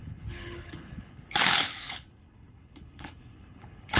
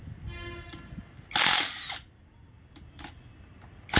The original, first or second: second